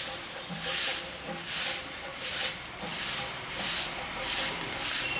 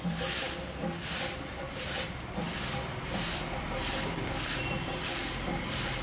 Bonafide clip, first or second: second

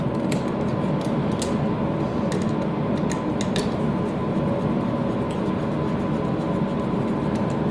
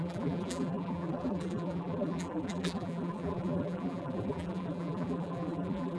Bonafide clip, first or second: first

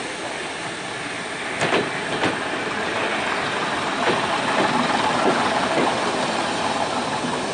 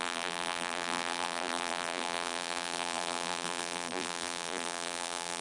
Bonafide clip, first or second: first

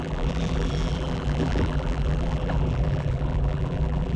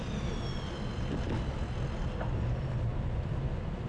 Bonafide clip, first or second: second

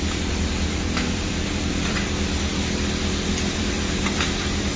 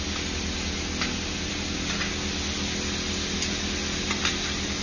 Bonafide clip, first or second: second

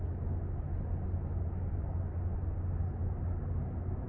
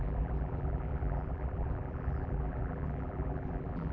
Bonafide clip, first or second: first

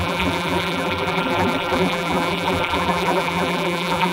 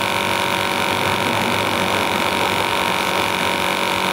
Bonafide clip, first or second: second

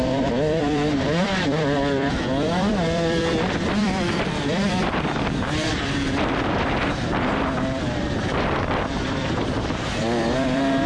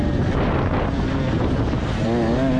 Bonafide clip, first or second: second